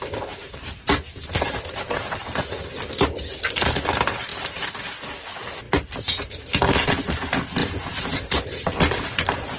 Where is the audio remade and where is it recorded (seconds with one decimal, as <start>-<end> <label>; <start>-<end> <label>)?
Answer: 0.0-0.4 recorded; 0.4-3.2 remade; 3.2-7.6 recorded; 7.6-9.6 remade